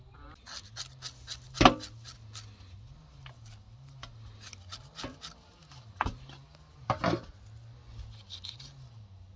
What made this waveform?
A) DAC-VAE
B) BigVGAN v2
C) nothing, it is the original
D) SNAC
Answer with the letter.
C